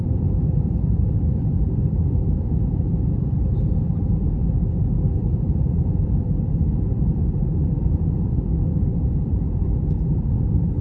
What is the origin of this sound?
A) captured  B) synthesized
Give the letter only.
B